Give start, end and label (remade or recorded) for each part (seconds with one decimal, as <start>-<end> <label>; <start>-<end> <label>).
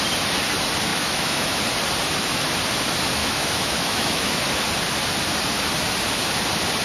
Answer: 0.0-0.9 recorded; 0.9-1.6 remade; 1.6-3.2 recorded; 3.2-4.3 remade; 4.3-6.8 recorded